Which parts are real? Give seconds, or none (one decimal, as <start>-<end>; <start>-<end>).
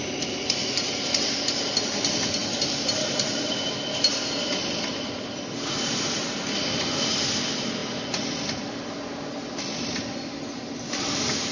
1.3-2.4; 3.7-11.5